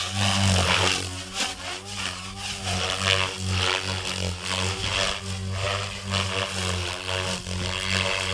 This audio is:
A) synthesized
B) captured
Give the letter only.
B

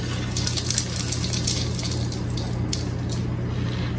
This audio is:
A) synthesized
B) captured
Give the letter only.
B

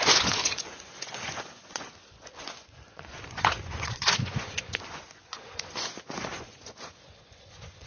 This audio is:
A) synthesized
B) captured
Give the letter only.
A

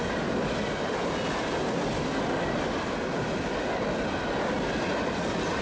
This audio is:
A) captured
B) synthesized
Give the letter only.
A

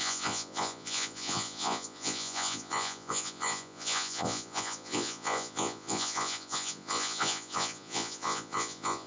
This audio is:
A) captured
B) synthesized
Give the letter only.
B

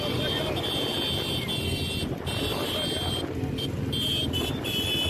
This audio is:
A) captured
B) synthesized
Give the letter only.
A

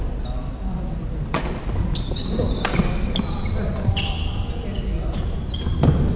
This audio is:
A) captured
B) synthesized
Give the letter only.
A